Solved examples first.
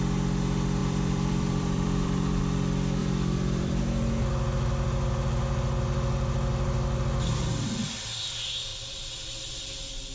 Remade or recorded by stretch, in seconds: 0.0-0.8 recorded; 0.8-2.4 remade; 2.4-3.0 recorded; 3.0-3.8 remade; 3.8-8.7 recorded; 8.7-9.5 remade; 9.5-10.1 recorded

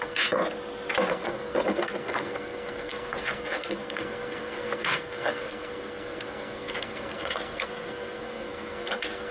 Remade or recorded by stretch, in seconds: 0.0-0.4 remade; 0.4-1.1 recorded; 1.1-9.3 remade

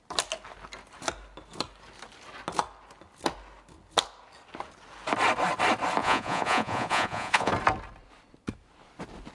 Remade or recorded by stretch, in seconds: 0.0-6.0 recorded; 6.0-7.5 remade; 7.5-9.3 recorded

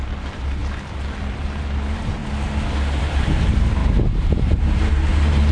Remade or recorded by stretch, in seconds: 0.0-0.6 remade; 0.6-1.2 recorded; 1.2-2.2 remade; 2.2-3.0 recorded; 3.0-3.8 remade; 3.8-4.6 recorded; 4.6-5.5 remade